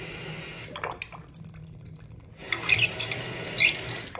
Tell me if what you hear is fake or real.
real